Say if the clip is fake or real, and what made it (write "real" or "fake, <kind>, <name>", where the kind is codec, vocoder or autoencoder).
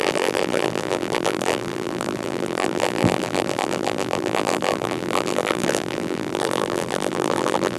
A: fake, vocoder, BigVGAN v2